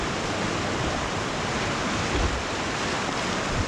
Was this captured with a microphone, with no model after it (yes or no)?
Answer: yes